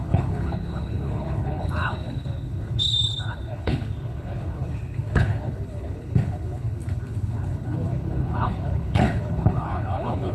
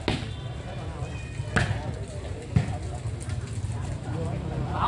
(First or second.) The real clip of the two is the second